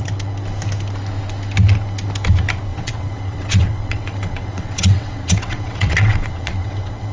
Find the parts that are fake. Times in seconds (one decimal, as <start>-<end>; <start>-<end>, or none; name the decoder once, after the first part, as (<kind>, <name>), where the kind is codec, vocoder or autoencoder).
2.7-7.1 (vocoder, WaveNeXt)